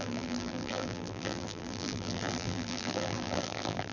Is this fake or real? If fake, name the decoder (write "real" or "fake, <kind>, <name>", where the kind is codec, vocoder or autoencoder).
fake, vocoder, BigVGAN v2